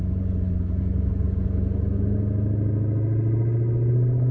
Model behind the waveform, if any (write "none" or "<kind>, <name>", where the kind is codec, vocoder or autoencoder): none